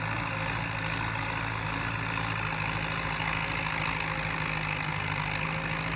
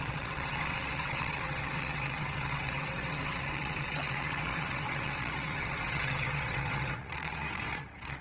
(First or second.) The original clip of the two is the first